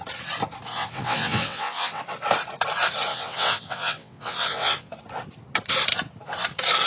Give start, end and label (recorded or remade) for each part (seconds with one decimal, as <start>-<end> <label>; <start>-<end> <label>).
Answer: 0.0-0.7 recorded; 0.7-2.0 remade; 2.0-3.1 recorded; 3.1-4.9 remade; 4.9-6.9 recorded